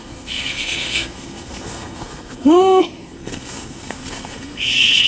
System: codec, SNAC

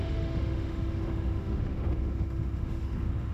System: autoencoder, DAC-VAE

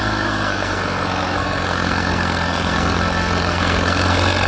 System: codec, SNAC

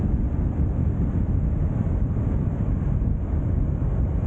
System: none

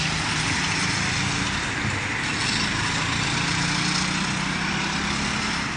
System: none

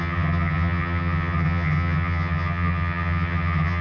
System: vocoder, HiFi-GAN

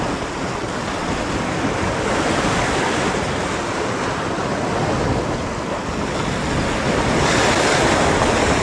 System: none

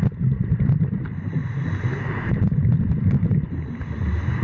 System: vocoder, BigVGAN v2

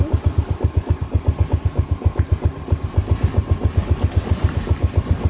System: none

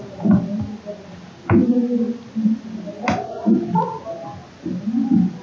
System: none